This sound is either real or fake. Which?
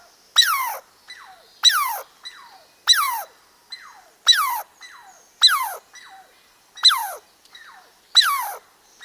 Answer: real